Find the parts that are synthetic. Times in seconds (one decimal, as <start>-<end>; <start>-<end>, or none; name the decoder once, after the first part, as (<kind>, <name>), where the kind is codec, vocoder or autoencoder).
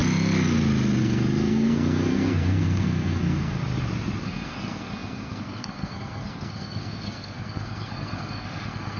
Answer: 1.0-3.6 (codec, SNAC); 4.2-9.0